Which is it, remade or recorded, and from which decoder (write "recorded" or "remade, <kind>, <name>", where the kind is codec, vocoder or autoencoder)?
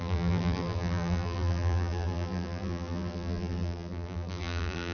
remade, vocoder, BigVGAN v2